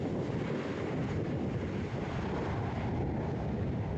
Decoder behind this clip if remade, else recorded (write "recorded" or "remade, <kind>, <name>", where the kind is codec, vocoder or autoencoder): recorded